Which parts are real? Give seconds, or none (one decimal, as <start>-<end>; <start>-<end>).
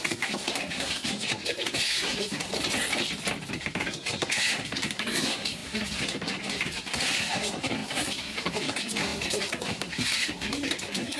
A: 2.5-3.5